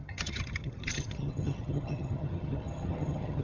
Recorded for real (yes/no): no